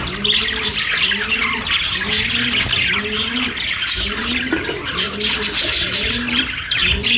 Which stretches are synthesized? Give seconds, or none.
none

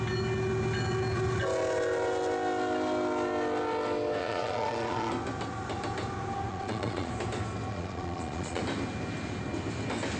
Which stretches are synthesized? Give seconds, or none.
4.2-5.1 (vocoder, Vocos); 6.5-7.1; 7.7-8.6

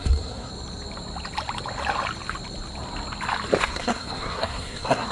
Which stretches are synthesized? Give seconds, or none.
0.0-0.5 (codec, SNAC); 3.6-5.1

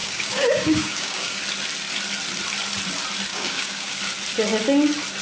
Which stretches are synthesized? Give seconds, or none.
0.0-1.4 (codec, DAC); 3.3-4.0

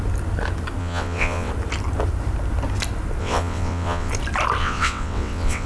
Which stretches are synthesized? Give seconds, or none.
0.8-1.5 (vocoder, WaveNeXt); 3.2-4.1; 4.6-5.7

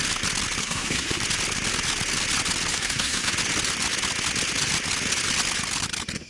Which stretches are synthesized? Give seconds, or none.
0.6-1.2 (codec, SNAC); 2.7-3.3